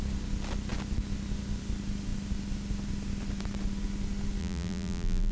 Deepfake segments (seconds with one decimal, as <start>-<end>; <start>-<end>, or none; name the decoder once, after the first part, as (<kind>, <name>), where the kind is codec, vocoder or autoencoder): 4.4-5.3 (vocoder, BigVGAN v2)